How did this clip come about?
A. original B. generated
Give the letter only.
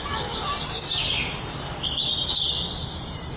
A